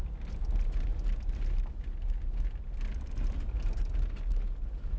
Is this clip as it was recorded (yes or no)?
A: yes